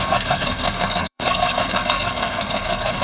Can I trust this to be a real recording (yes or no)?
no